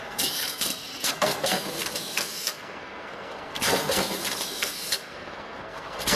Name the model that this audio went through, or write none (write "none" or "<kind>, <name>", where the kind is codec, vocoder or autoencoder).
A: codec, SNAC